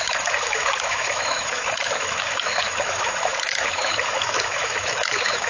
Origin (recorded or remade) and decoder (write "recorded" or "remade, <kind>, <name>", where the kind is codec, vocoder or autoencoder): remade, autoencoder, DAC-VAE